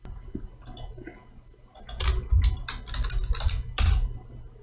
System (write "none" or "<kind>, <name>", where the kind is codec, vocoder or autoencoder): none